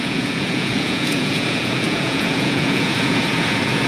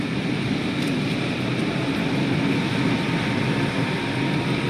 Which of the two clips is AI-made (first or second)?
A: first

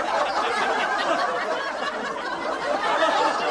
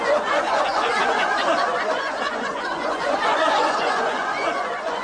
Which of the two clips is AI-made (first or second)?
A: second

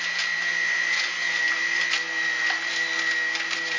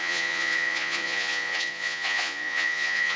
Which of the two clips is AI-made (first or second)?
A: second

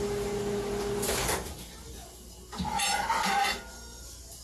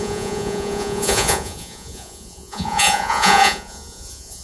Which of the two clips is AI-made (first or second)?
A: second